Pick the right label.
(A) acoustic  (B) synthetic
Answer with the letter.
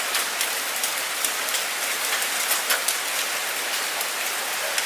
A